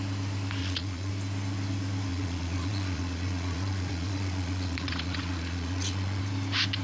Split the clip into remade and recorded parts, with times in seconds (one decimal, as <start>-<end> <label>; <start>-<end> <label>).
0.0-0.6 recorded; 0.6-1.1 remade; 1.1-2.1 recorded; 2.1-6.2 remade; 6.2-6.8 recorded